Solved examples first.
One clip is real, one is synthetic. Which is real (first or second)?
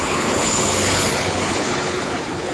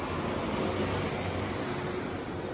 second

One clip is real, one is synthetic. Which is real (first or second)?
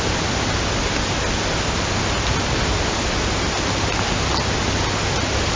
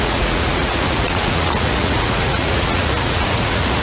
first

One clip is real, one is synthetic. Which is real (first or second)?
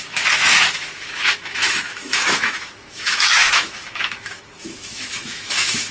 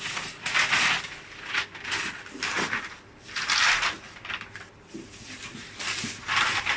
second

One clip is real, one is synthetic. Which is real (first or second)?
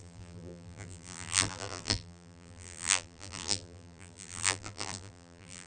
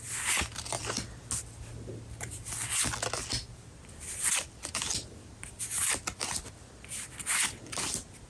second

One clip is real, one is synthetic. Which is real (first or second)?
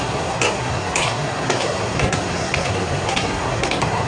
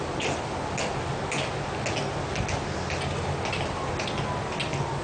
second